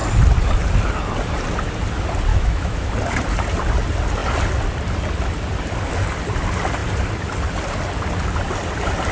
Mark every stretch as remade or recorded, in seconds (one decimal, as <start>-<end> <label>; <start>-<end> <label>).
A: 0.0-2.3 recorded; 2.3-2.9 remade; 2.9-9.1 recorded